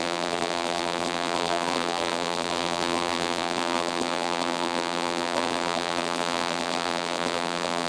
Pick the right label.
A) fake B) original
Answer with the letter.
A